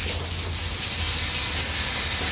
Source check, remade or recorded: recorded